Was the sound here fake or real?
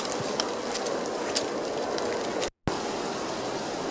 real